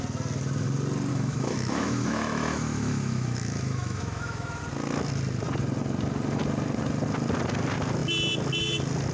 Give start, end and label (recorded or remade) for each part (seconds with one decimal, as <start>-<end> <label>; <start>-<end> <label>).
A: 0.0-1.1 recorded; 1.1-4.6 remade; 4.6-9.1 recorded